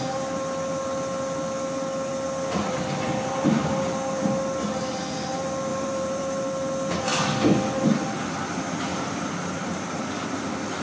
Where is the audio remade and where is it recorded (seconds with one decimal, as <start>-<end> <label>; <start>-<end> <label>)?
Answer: 0.0-5.7 recorded; 5.7-6.4 remade; 6.4-8.9 recorded; 8.9-10.4 remade; 10.4-10.8 recorded